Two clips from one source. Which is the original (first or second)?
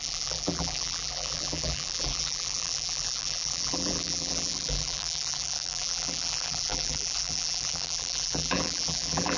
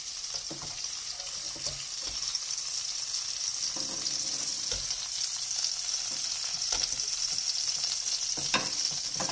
second